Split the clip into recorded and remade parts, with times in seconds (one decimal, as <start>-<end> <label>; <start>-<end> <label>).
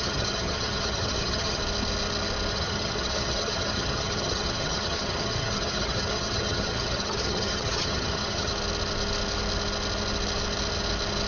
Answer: 0.0-1.6 remade; 1.6-2.5 recorded; 2.5-8.5 remade; 8.5-11.3 recorded